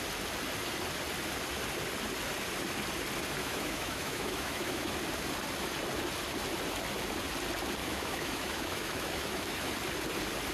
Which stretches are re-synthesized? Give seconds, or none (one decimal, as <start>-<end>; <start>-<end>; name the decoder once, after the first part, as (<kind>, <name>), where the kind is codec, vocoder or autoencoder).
3.4-4.9 (autoencoder, DAC-VAE); 7.8-9.7

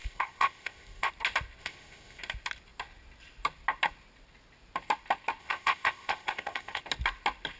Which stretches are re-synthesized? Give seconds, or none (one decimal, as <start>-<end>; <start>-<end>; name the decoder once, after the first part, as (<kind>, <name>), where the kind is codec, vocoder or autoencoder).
0.0-1.1 (codec, ZipCodec); 1.6-2.2; 5.4-6.8

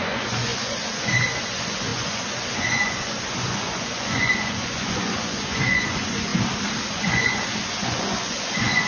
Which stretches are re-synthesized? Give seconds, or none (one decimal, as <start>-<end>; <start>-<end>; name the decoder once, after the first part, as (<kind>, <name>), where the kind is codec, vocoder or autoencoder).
0.0-6.3 (vocoder, Vocos); 6.9-8.9

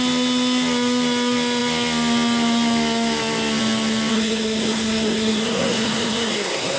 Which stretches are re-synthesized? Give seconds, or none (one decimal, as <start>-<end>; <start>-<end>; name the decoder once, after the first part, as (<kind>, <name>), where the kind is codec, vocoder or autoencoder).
4.1-6.8 (codec, SNAC)